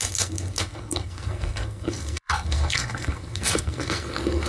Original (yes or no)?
no